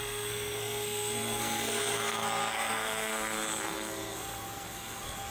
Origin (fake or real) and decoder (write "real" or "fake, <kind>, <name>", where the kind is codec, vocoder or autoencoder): fake, codec, SNAC